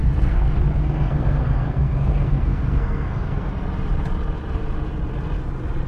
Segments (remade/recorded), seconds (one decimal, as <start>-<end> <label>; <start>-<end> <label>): 0.0-3.5 remade; 3.5-5.9 recorded